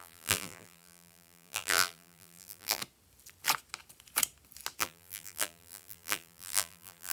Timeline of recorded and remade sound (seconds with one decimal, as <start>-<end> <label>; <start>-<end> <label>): 0.0-2.8 remade; 2.8-4.8 recorded; 4.8-7.1 remade